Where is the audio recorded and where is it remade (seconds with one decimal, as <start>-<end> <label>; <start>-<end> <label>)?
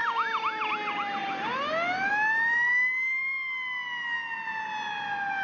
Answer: 0.0-5.4 recorded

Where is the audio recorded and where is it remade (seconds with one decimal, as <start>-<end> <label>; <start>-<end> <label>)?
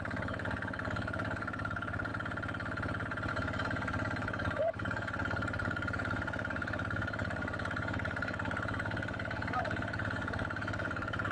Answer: 0.0-2.1 remade; 2.1-3.3 recorded; 3.3-11.3 remade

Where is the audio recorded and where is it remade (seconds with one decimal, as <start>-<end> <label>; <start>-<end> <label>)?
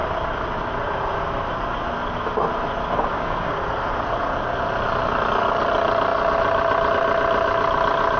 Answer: 0.0-3.1 recorded; 3.1-3.6 remade; 3.6-8.2 recorded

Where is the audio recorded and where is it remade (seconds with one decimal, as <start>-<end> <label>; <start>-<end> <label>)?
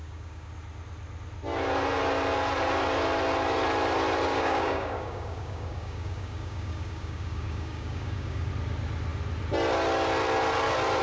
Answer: 0.0-0.5 remade; 0.5-4.3 recorded; 4.3-8.5 remade; 8.5-11.0 recorded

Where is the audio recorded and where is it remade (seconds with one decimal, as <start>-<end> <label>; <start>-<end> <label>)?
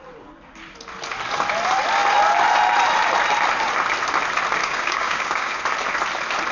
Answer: 0.0-4.6 recorded; 4.6-5.6 remade; 5.6-6.5 recorded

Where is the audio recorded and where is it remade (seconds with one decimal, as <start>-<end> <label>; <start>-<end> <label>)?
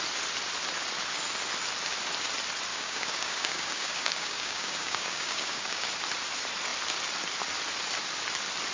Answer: 0.0-2.7 recorded; 2.7-5.9 remade; 5.9-8.7 recorded